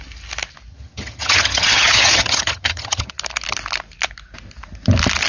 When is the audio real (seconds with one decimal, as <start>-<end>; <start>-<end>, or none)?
0.0-0.7; 3.1-5.3

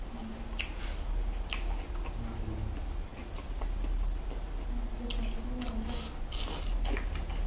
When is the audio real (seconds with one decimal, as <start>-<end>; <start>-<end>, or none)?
0.0-7.5